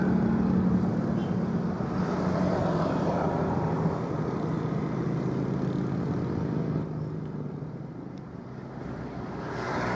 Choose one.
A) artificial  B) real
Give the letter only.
B